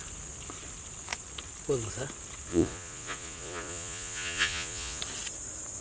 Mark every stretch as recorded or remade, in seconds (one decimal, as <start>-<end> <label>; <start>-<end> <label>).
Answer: 0.0-2.5 recorded; 2.5-5.0 remade; 5.0-5.8 recorded